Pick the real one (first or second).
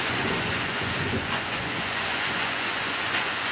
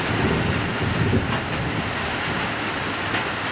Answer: second